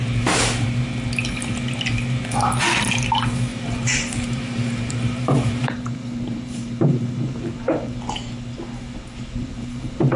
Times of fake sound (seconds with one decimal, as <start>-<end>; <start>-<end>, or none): 3.5-8.0; 9.4-10.2

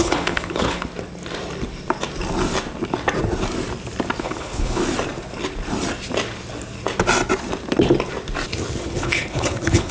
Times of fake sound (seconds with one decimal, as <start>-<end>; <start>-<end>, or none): 0.0-0.9; 4.2-4.8; 8.8-9.9

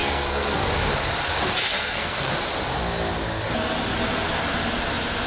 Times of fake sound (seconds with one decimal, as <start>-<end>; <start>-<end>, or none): 0.0-0.7; 1.6-2.3

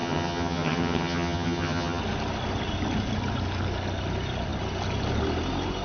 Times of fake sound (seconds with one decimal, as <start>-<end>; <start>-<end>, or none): 0.0-2.0